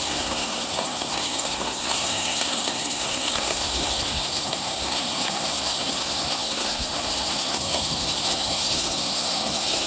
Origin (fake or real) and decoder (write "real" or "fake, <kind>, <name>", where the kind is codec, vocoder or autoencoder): fake, codec, SNAC